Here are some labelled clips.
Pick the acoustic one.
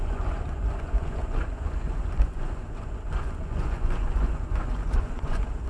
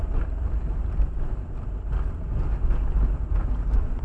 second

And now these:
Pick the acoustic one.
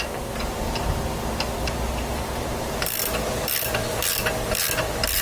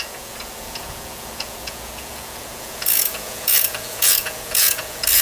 first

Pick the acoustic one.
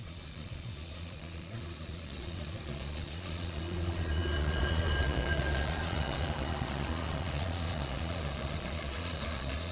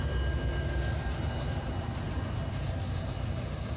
second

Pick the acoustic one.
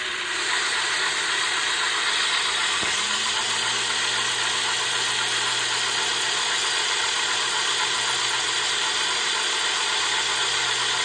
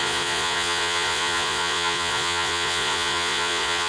first